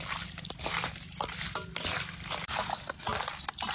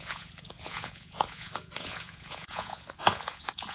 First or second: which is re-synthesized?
second